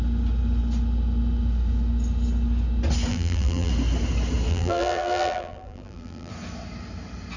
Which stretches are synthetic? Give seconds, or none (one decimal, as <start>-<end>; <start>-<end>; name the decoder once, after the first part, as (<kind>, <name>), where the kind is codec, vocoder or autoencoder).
3.1-3.7 (vocoder, BigVGAN v2); 4.5-6.3